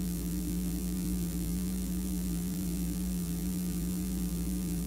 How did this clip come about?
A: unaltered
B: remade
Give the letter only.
B